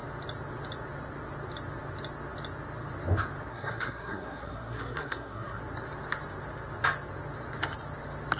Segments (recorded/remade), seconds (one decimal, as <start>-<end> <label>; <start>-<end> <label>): 0.0-3.5 recorded; 3.5-5.6 remade; 5.6-8.4 recorded